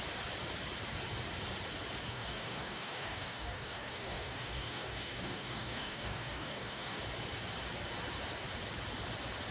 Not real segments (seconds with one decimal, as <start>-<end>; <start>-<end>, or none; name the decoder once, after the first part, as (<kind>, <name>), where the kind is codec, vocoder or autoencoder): 2.1-7.0 (codec, DAC)